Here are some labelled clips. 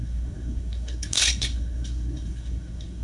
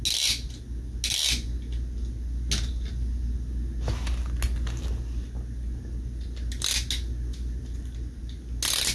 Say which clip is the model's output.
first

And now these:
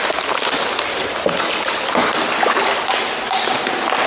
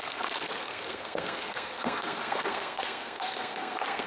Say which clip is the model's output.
second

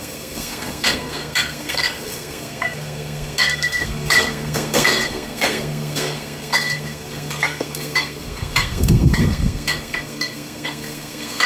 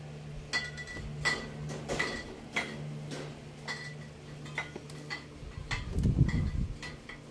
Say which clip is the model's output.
first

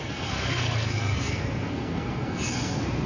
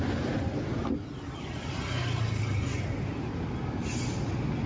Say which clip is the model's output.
first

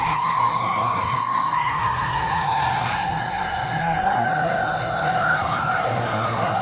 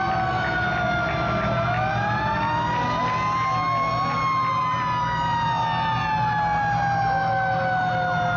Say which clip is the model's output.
first